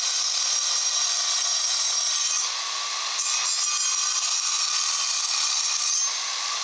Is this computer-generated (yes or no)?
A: no